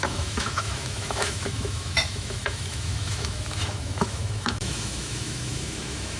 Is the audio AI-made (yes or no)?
yes